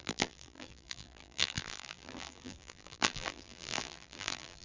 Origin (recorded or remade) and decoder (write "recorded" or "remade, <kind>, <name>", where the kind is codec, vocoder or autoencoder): remade, vocoder, BigVGAN v2